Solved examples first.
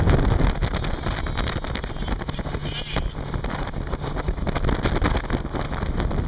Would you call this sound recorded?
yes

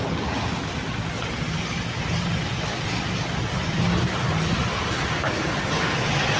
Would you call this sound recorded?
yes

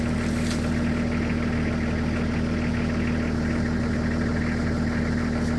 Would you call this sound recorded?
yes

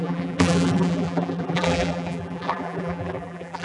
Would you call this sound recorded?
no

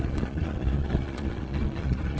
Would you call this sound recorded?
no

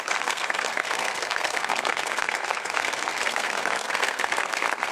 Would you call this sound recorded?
no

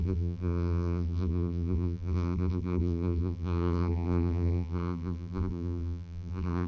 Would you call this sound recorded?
no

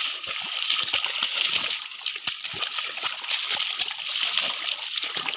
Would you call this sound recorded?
yes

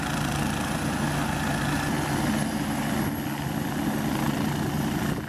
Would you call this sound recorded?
yes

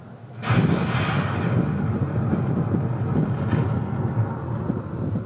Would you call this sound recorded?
yes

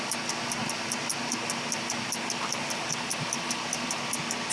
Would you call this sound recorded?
yes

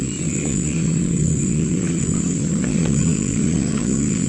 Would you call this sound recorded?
no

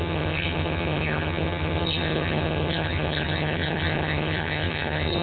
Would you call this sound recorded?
no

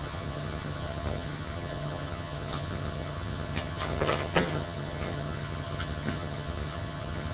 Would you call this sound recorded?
no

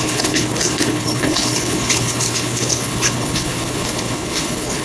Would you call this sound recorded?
no